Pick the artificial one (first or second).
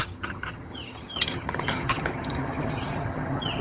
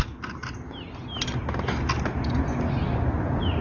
first